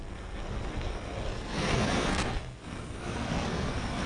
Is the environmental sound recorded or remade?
remade